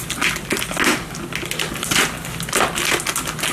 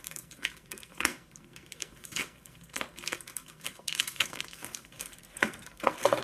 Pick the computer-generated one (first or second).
second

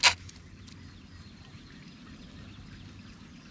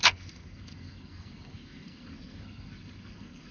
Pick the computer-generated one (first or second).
second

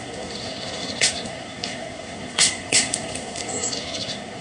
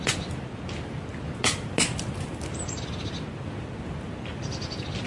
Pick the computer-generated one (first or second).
first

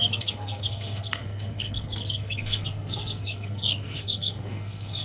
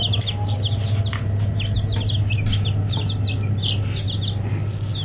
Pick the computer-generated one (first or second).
first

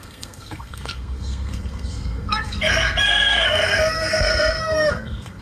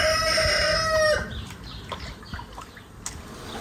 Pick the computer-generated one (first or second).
first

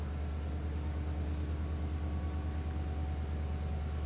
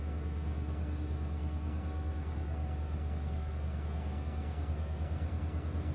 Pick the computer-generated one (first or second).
second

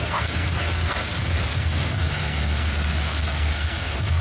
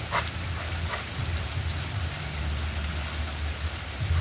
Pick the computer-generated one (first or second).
first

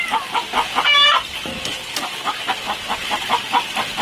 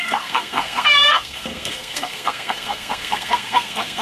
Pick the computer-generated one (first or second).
second